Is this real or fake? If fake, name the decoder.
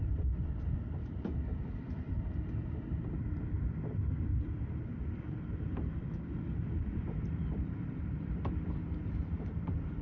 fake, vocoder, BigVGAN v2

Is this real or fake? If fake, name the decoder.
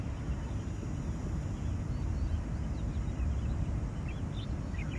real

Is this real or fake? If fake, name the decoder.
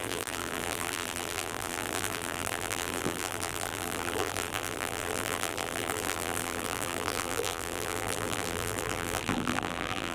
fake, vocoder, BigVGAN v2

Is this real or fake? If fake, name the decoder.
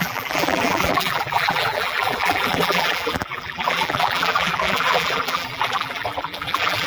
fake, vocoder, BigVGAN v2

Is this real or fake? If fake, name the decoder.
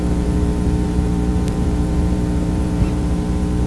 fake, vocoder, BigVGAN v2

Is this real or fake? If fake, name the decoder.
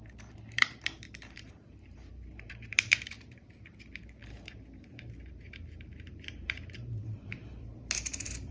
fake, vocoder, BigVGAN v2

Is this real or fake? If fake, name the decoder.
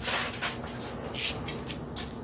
real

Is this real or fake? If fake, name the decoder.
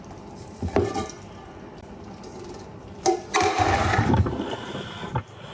fake, vocoder, BigVGAN v2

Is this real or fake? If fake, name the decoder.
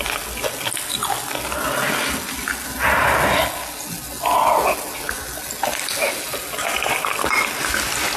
real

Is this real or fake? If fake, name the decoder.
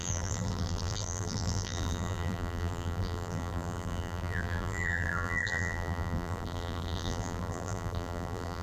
fake, vocoder, BigVGAN v2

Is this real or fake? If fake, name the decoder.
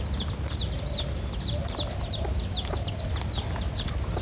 real